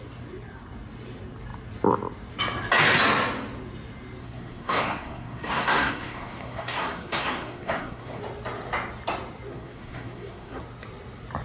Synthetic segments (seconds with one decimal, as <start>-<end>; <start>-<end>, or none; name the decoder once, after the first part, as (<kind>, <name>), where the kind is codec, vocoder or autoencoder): 4.2-8.2 (codec, SNAC); 9.5-10.6